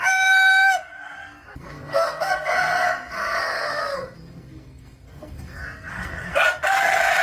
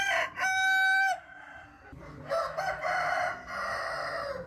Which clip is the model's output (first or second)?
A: first